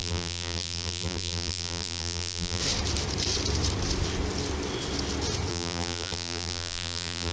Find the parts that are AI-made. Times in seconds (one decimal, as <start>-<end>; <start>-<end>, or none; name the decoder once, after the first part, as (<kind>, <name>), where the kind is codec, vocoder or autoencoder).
0.0-2.6 (vocoder, BigVGAN v2); 5.5-7.3